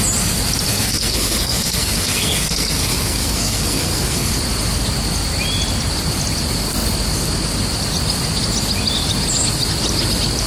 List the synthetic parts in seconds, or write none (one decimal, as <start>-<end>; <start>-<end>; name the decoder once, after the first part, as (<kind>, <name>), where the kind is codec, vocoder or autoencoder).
0.7-4.3 (codec, SNAC)